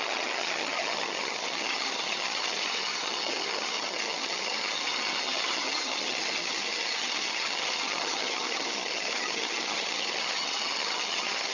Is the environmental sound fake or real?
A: fake